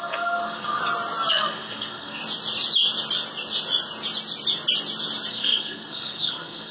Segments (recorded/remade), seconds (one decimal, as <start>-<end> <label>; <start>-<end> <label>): 0.0-0.8 remade; 0.8-1.3 recorded; 1.3-2.2 remade; 2.2-5.3 recorded; 5.3-6.7 remade